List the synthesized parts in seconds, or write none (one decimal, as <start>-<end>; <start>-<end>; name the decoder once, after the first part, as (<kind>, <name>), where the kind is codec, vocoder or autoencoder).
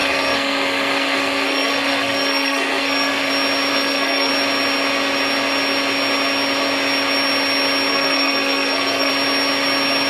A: 0.0-3.3 (codec, SNAC); 3.7-4.3; 7.9-9.1